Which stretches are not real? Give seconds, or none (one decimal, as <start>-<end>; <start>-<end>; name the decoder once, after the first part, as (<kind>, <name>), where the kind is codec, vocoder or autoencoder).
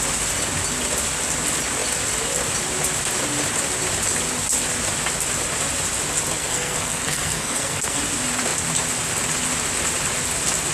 6.4-8.0 (codec, SNAC)